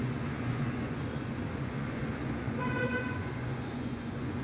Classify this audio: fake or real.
fake